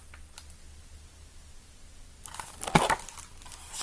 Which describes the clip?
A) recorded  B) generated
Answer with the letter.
A